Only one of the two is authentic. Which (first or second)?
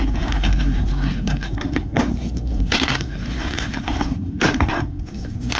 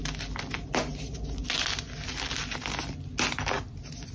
second